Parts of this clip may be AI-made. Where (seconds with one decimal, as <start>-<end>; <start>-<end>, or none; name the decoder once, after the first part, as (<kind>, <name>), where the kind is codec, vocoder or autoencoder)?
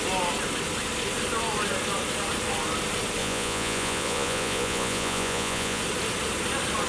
3.2-5.8 (vocoder, Vocos)